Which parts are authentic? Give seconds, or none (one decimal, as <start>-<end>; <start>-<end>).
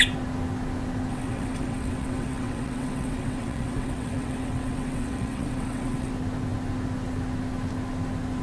0.0-1.1; 6.1-8.4